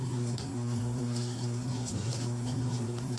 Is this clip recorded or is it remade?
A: remade